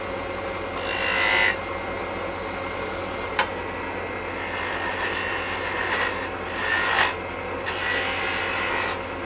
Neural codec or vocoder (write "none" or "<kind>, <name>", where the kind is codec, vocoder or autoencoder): none